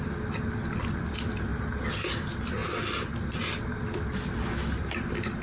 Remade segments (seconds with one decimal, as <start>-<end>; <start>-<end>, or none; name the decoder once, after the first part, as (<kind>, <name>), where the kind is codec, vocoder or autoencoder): none